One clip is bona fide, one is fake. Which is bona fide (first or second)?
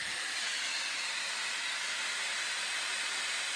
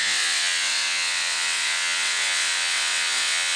first